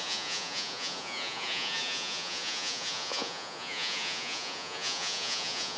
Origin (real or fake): fake